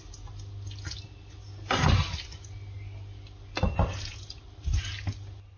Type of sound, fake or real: real